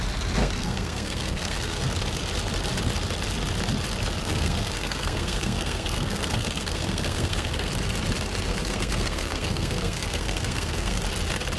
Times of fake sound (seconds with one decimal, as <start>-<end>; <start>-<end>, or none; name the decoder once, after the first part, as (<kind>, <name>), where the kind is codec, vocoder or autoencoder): 0.4-1.8 (codec, SNAC); 4.2-7.7; 8.5-11.0